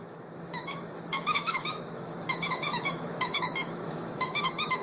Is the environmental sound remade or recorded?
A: remade